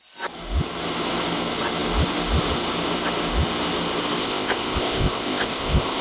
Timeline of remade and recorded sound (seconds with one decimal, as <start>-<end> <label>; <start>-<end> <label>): 0.0-4.2 recorded; 4.2-6.0 remade